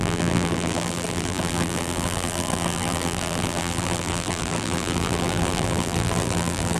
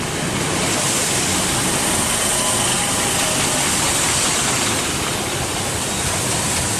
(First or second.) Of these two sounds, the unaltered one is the second